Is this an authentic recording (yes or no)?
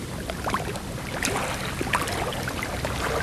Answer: yes